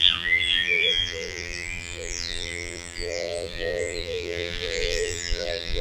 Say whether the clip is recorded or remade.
remade